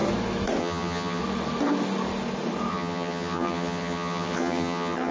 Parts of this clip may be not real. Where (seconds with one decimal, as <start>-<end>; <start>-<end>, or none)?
0.6-1.2; 2.7-5.1